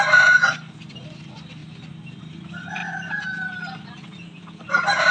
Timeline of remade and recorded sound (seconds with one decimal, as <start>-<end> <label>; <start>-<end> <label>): 0.0-5.1 recorded